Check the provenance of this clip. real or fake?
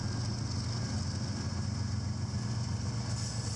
real